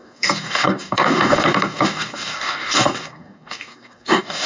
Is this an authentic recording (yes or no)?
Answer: no